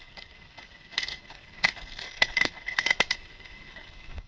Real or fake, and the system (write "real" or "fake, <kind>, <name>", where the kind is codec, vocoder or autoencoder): fake, codec, SNAC